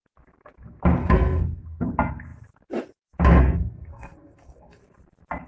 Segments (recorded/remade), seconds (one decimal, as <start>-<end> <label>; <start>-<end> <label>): 0.0-1.0 recorded; 1.0-1.9 remade; 1.9-3.4 recorded; 3.4-4.8 remade; 4.8-5.5 recorded